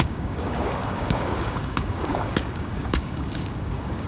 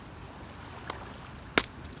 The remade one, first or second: first